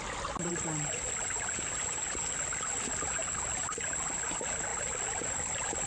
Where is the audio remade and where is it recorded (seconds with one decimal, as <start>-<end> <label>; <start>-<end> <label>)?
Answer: 0.0-5.9 recorded